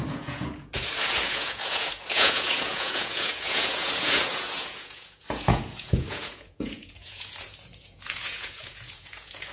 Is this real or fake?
fake